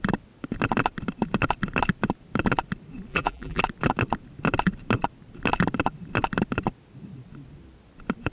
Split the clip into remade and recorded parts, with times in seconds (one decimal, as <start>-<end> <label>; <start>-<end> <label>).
0.0-3.1 recorded; 3.1-3.6 remade; 3.6-8.3 recorded